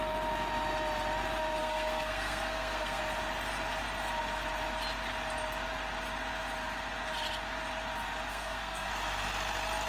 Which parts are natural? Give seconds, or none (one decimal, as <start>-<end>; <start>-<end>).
0.0-1.6; 3.0-8.3; 8.9-9.9